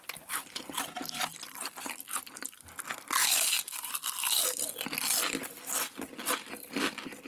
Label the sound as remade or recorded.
recorded